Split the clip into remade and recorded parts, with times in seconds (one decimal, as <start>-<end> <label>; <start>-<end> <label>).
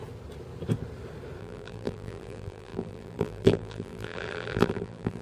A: 0.0-1.4 recorded; 1.4-5.2 remade